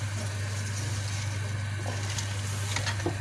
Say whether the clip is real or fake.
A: real